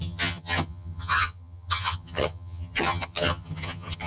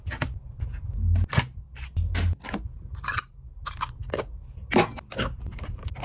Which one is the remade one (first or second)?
first